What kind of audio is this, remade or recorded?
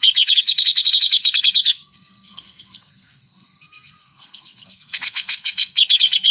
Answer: remade